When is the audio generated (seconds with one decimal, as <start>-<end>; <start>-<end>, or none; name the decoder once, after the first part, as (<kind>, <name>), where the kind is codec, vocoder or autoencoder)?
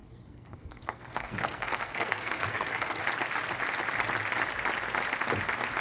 0.0-3.0 (codec, SNAC)